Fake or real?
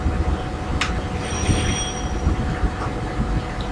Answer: real